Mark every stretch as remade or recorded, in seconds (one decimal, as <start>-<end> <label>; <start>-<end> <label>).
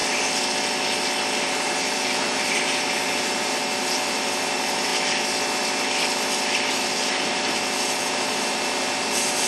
0.0-1.4 recorded; 1.4-4.9 remade; 4.9-6.7 recorded; 6.7-9.5 remade